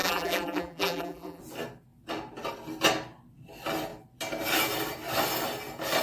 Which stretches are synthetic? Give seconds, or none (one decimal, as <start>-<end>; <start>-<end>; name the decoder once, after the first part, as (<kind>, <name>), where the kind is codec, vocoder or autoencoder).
0.0-1.4 (vocoder, BigVGAN v2)